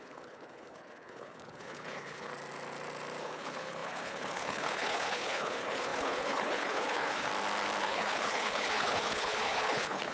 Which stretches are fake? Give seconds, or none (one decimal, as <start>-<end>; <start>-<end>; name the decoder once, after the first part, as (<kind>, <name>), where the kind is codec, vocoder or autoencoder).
0.0-2.3 (codec, HILCodec); 3.2-7.3; 7.8-10.1